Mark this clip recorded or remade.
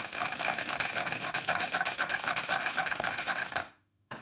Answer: remade